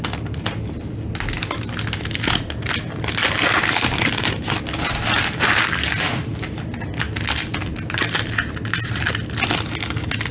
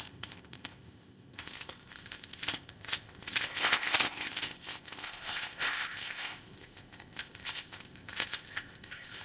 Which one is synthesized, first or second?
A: second